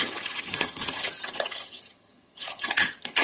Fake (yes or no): yes